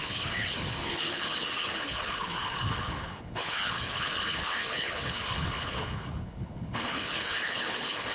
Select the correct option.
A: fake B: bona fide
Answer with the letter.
A